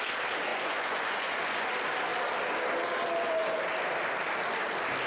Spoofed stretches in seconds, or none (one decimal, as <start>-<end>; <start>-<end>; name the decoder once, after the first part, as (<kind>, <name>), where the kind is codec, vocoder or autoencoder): 0.5-1.7 (vocoder, Vocos)